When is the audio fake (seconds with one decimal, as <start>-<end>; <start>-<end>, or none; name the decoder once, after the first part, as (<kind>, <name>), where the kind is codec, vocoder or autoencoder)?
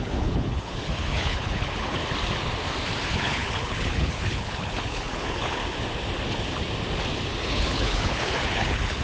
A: 0.0-2.0 (codec, HILCodec); 3.1-5.6; 7.4-9.0